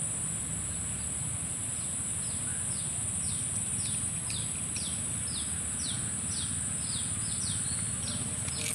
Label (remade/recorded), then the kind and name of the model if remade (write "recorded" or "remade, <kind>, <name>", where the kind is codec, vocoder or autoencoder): recorded